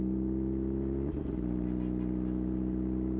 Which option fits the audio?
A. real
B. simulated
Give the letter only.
A